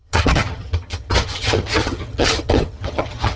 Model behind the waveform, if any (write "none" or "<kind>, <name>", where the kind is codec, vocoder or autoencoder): vocoder, HiFi-GAN